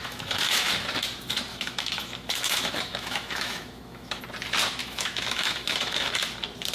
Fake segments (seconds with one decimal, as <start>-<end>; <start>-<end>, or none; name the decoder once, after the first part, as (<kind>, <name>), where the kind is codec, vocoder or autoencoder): 0.0-0.7 (autoencoder, DAC-VAE); 1.5-4.2; 4.8-6.2